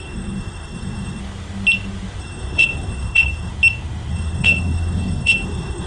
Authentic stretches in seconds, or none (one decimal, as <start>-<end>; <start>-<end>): 1.2-2.2; 3.5-4.1